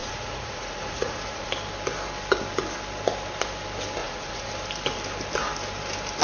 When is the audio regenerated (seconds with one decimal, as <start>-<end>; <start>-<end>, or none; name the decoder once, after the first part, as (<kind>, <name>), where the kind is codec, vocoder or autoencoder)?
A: 0.0-1.5 (vocoder, Vocos); 4.0-4.5